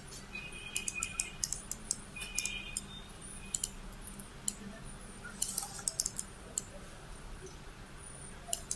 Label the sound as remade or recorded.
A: recorded